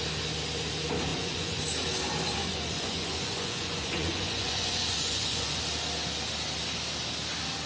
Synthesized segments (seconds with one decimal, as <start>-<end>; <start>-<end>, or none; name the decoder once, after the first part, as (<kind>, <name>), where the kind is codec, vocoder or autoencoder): 1.1-1.6 (vocoder, Vocos); 2.4-5.6